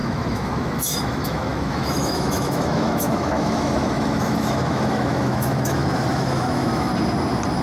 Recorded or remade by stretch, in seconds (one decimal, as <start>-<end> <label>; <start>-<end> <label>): 0.0-6.9 remade; 6.9-7.6 recorded

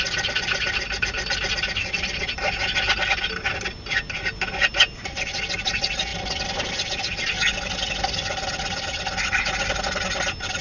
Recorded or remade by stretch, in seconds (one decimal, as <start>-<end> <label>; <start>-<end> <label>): 0.0-6.1 recorded; 6.1-6.7 remade; 6.7-10.6 recorded

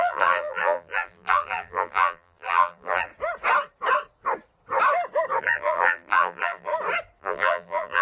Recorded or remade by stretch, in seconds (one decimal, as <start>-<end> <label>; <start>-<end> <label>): 0.0-3.1 remade; 3.1-5.4 recorded; 5.4-6.7 remade; 6.7-7.2 recorded; 7.2-8.0 remade

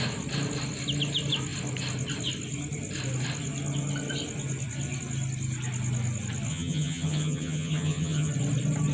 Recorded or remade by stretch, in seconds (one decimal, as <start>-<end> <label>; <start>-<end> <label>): 0.0-6.5 recorded; 6.5-8.3 remade; 8.3-8.9 recorded